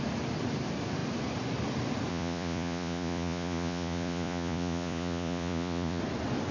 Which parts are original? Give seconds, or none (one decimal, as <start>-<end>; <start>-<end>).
0.0-2.1; 6.0-6.5